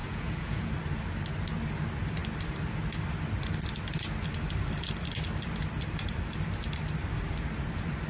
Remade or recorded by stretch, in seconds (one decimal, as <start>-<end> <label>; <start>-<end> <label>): 0.0-0.7 remade; 0.7-8.1 recorded